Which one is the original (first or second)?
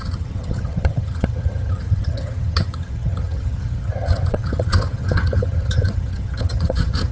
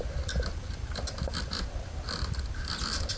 second